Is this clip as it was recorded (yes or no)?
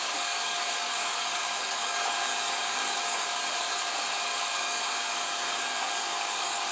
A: no